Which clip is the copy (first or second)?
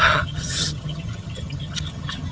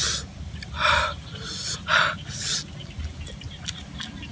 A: first